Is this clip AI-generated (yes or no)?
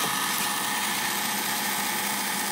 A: no